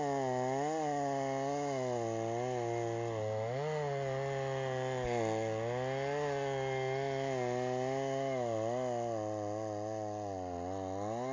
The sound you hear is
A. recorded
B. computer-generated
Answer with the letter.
A